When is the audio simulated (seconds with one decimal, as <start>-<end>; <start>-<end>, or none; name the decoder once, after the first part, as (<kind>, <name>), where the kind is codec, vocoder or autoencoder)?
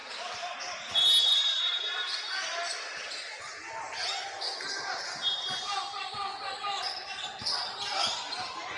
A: none